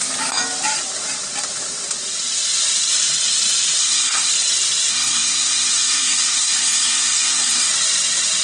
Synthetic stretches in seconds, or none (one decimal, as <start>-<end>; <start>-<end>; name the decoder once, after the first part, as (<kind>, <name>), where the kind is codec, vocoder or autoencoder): 3.8-4.3 (codec, SNAC); 4.9-7.7